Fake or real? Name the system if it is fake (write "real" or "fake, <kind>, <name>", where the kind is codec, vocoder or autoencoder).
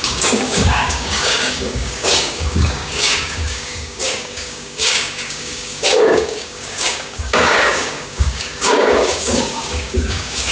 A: fake, codec, DAC